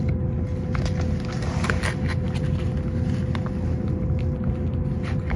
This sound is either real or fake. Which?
real